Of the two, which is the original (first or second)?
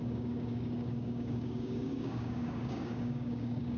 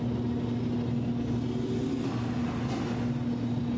second